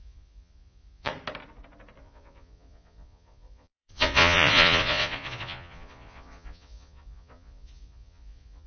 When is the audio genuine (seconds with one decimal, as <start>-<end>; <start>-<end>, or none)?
1.1-2.0